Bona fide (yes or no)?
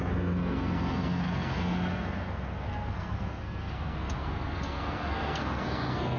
no